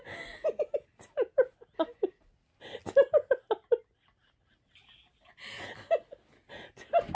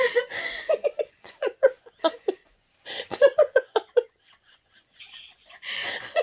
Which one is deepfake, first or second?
second